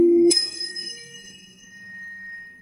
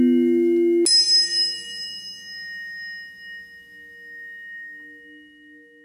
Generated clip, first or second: first